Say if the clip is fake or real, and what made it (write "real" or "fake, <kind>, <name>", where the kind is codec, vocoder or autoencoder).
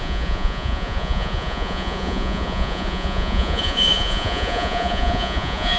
fake, vocoder, Vocos